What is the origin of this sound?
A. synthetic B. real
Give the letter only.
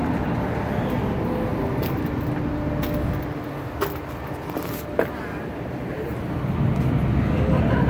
B